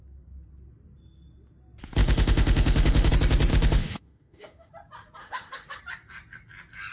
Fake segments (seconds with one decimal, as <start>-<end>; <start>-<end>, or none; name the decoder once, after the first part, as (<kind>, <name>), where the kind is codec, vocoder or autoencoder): 2.0-3.1 (autoencoder, DAC-VAE); 3.5-4.7; 5.2-5.8